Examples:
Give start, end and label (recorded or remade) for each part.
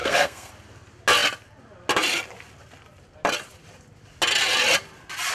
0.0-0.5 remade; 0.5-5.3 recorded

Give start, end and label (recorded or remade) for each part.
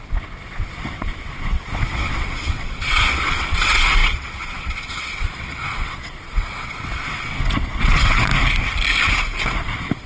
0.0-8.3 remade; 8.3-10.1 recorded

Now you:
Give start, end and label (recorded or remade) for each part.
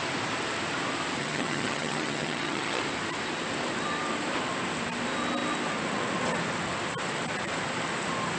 0.0-1.2 recorded; 1.2-2.8 remade; 2.8-8.4 recorded